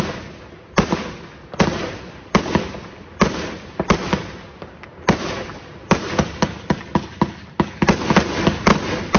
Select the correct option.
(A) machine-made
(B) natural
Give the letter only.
B